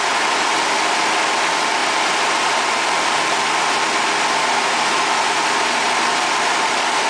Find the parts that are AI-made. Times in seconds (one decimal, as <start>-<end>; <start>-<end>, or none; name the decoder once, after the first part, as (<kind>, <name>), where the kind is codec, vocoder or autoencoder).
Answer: none